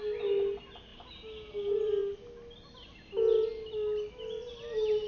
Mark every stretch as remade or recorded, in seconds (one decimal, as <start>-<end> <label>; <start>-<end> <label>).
0.0-5.1 recorded